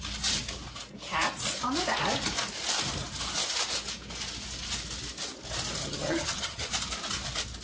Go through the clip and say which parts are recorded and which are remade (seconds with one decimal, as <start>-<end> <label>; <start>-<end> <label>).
0.0-5.8 recorded; 5.8-6.7 remade; 6.7-7.6 recorded